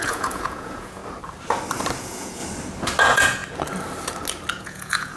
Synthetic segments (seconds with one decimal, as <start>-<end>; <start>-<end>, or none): 0.0-1.0; 2.0-2.4; 3.0-3.4; 4.6-5.2